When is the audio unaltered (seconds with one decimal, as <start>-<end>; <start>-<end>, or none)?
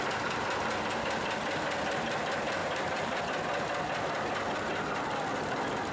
0.0-2.6; 3.2-5.9